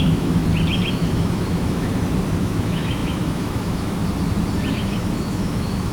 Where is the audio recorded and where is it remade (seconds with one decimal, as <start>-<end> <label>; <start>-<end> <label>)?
0.0-0.4 remade; 0.4-0.9 recorded; 0.9-1.9 remade; 1.9-2.4 recorded; 2.4-4.0 remade; 4.0-4.7 recorded; 4.7-5.9 remade